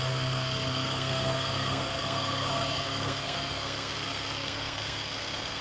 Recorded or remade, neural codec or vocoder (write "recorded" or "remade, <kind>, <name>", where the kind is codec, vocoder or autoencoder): remade, codec, SNAC